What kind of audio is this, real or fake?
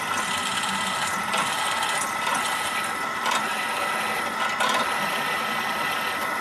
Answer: real